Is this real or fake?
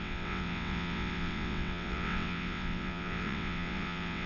fake